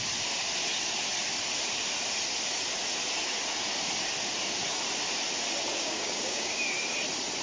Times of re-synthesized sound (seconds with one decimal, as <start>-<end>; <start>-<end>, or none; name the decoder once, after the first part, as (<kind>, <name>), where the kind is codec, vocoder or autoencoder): 5.8-6.6 (codec, DAC)

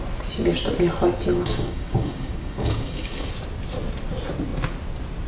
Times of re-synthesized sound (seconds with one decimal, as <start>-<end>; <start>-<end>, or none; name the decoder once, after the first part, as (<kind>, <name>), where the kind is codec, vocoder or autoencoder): 1.3-3.3 (codec, DAC)

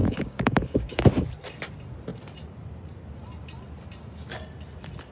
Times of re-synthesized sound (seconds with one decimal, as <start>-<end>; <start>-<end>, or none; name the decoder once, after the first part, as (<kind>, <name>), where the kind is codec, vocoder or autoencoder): 0.0-1.0 (codec, DAC)

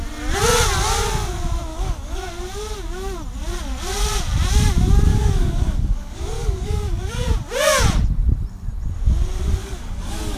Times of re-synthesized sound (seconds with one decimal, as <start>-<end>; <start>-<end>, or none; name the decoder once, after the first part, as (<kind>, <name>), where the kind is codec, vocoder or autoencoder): 1.7-2.3 (codec, DAC); 5.1-7.3; 9.6-10.4

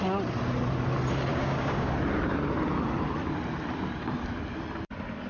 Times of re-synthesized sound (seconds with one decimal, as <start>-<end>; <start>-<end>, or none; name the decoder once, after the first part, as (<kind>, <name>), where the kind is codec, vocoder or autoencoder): 1.3-1.9 (codec, DAC)

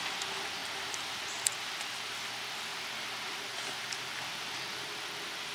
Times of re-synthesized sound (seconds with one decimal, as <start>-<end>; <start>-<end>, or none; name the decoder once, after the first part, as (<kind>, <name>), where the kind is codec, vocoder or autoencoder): none

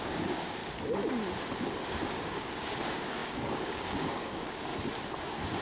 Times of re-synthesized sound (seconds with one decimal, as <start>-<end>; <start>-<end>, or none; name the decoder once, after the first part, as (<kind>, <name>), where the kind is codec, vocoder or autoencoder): 0.0-0.6 (codec, DAC); 1.9-4.7